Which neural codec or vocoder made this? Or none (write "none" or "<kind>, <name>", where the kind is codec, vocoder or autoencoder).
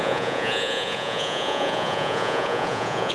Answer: vocoder, Vocos